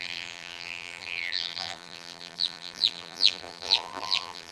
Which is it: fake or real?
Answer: fake